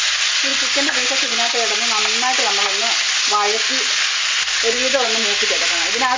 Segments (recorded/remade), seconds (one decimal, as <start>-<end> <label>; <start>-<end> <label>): 0.0-6.2 recorded